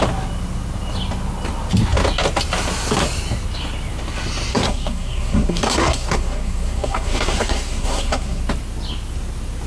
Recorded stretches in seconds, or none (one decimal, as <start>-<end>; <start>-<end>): 0.0-4.5; 8.4-9.7